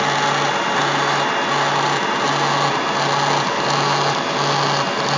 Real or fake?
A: real